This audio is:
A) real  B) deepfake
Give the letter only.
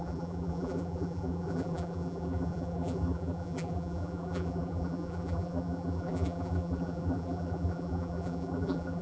B